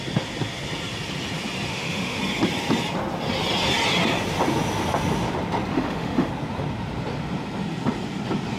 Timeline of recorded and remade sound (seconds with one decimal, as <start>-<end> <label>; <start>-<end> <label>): 0.0-1.7 recorded; 1.7-2.2 remade; 2.2-5.7 recorded; 5.7-6.3 remade; 6.3-8.6 recorded